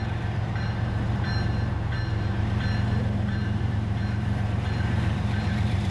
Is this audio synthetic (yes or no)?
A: yes